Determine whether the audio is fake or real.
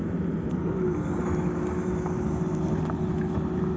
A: real